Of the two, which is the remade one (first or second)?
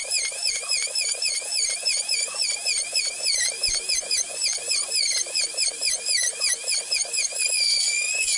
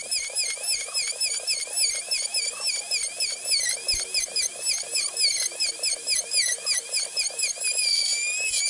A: first